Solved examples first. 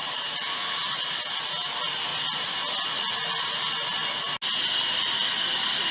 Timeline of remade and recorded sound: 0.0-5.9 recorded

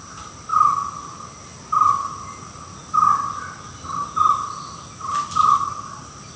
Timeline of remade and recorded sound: 0.0-6.4 recorded

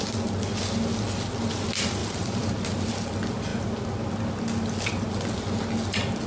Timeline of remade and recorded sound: 0.0-2.0 recorded; 2.0-2.9 remade; 2.9-6.3 recorded

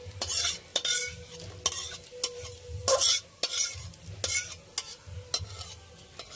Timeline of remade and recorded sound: 0.0-6.4 recorded

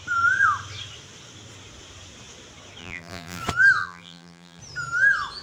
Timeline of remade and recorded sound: 0.0-2.8 recorded; 2.8-3.4 remade; 3.4-3.8 recorded; 3.8-4.6 remade; 4.6-5.4 recorded